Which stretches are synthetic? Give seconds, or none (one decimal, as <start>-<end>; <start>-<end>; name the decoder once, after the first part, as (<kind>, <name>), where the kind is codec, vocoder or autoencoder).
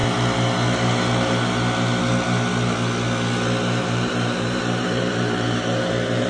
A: 3.8-6.3 (vocoder, BigVGAN v2)